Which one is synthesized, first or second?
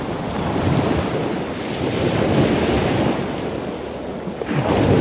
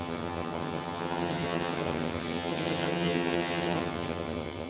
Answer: second